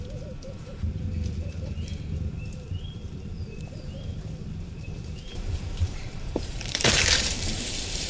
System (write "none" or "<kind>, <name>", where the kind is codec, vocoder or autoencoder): vocoder, BigVGAN v2